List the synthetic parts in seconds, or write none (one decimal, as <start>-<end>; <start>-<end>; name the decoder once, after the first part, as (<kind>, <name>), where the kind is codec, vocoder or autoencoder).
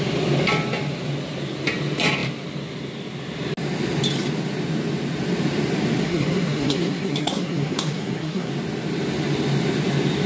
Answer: 6.0-8.5 (codec, SNAC)